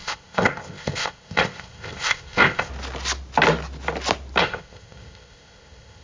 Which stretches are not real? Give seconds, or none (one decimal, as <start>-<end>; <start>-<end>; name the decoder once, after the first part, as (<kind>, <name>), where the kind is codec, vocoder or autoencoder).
0.0-2.7 (codec, ZipCodec); 4.4-6.0